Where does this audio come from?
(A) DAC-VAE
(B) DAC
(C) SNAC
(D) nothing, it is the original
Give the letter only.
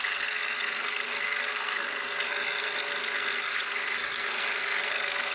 C